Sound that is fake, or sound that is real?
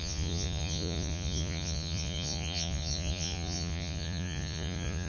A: fake